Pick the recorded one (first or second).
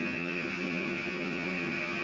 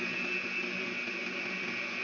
second